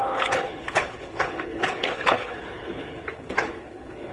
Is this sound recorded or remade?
remade